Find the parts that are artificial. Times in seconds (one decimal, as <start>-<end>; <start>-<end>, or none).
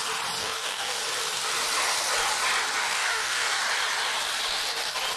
0.4-1.0; 2.8-3.6